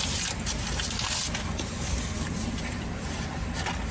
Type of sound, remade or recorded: recorded